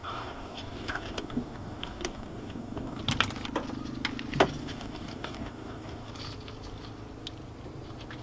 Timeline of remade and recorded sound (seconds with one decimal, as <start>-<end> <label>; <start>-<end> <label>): 0.0-3.0 remade; 3.0-4.6 recorded; 4.6-6.1 remade; 6.1-8.2 recorded